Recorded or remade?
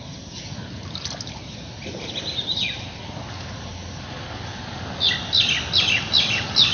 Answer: recorded